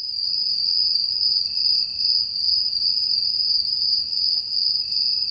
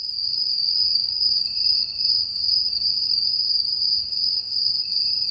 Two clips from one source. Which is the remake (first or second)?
second